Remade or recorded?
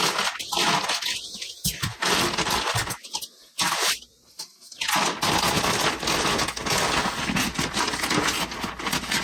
recorded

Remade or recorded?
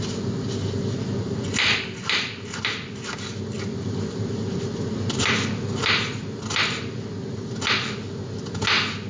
recorded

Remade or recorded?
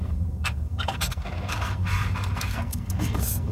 remade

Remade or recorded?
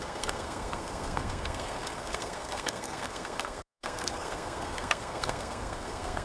remade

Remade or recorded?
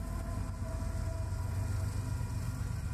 recorded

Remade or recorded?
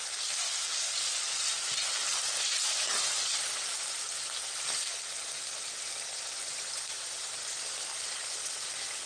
recorded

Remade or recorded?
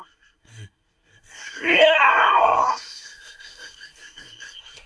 remade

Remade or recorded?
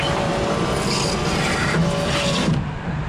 recorded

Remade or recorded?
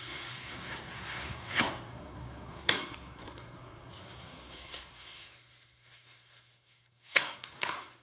remade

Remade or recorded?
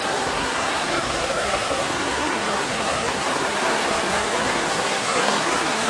remade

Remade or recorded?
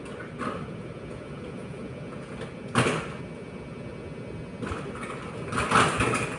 recorded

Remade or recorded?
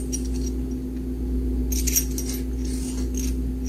recorded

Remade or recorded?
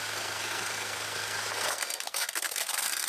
remade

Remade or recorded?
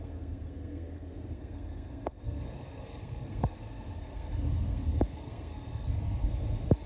remade